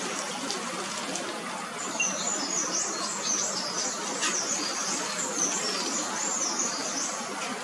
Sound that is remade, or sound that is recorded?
recorded